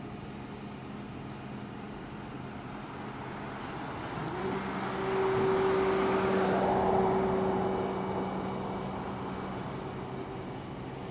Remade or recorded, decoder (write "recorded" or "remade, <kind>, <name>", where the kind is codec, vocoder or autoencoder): recorded